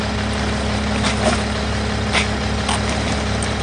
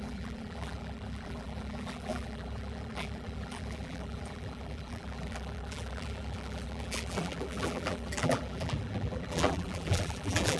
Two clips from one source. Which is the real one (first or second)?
first